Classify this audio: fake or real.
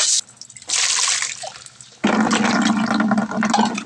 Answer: real